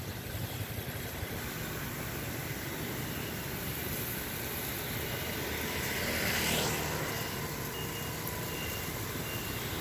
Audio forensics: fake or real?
real